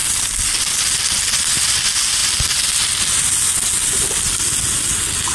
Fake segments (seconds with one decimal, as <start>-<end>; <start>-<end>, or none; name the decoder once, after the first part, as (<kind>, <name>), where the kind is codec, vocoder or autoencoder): none